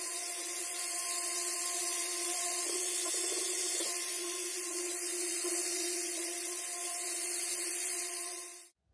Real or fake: fake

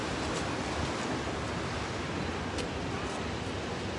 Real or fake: real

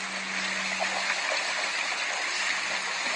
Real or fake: real